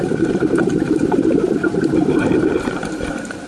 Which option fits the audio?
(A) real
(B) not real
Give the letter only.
B